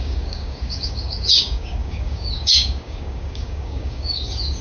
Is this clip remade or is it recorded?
remade